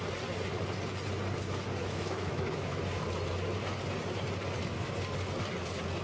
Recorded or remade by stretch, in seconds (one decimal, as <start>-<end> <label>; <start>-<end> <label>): 0.0-1.8 recorded; 1.8-2.8 remade; 2.8-6.0 recorded